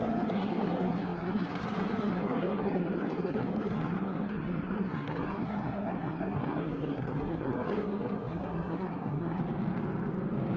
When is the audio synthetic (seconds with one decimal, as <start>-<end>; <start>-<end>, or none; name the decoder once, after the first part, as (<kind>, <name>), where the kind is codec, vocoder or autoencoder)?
0.0-9.4 (codec, SNAC)